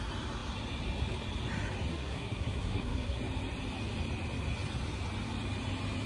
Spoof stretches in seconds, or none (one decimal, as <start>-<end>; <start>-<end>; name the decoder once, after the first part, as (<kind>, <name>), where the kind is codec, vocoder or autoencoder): 1.9-3.2 (codec, SNAC)